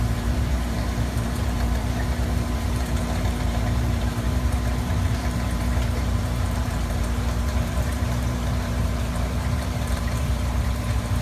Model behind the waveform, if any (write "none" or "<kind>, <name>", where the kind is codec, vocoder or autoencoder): vocoder, BigVGAN v2